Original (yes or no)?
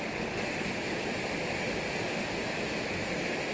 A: yes